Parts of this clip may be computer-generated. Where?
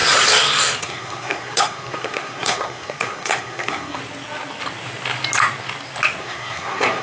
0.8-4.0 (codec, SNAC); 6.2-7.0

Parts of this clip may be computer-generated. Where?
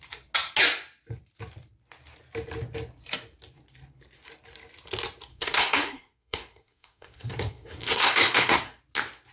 5.3-8.8 (codec, SNAC)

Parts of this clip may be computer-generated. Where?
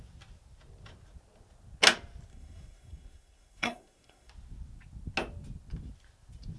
2.3-4.3 (codec, SNAC)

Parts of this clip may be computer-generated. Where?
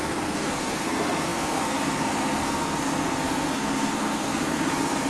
0.0-5.1 (codec, SNAC)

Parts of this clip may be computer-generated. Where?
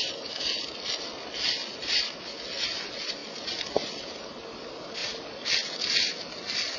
none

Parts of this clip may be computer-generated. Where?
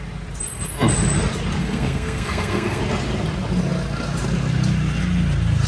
1.6-2.8 (codec, SNAC)